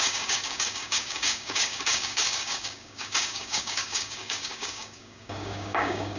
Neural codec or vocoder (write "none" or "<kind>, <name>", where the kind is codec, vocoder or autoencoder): codec, DAC